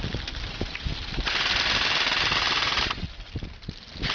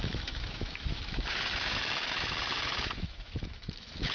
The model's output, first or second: second